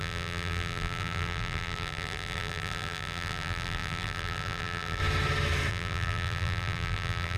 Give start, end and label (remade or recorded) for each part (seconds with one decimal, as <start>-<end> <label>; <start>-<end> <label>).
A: 0.0-5.0 remade; 5.0-5.7 recorded; 5.7-7.4 remade